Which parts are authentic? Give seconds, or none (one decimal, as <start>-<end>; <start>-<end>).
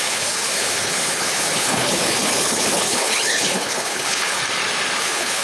4.4-5.0